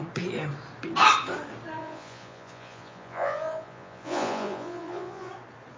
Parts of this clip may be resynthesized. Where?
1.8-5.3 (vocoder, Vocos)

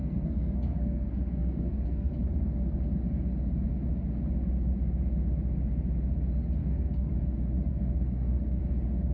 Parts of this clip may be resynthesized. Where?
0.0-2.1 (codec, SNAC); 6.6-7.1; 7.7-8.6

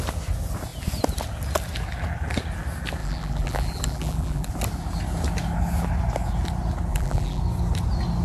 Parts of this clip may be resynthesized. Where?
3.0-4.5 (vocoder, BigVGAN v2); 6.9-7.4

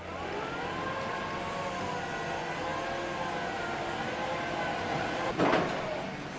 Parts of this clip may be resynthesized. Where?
4.9-5.4 (vocoder, Vocos)